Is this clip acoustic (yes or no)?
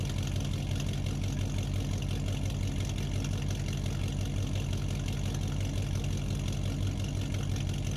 yes